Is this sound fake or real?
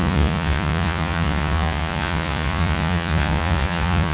fake